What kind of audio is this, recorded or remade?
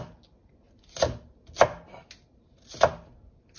recorded